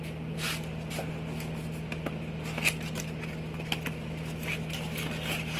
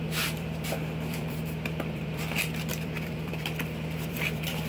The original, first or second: first